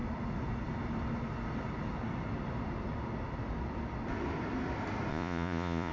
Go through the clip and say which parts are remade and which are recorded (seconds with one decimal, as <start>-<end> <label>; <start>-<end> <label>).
0.0-5.1 recorded; 5.1-5.9 remade